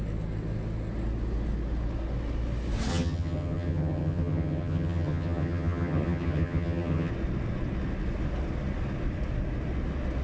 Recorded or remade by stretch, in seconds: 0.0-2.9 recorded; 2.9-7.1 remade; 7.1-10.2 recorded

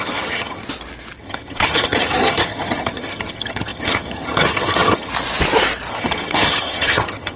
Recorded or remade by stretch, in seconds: 0.0-0.6 remade; 0.6-1.2 recorded; 1.2-5.1 remade; 5.1-5.9 recorded; 5.9-7.4 remade

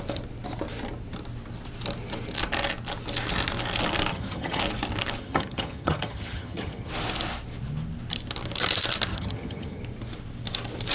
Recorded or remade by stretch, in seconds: 0.0-4.1 recorded; 4.1-4.6 remade; 4.6-5.2 recorded; 5.2-6.9 remade; 6.9-9.1 recorded; 9.1-9.8 remade; 9.8-10.9 recorded

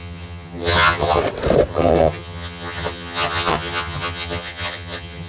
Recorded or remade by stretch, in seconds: 0.0-1.2 remade; 1.2-1.7 recorded; 1.7-5.3 remade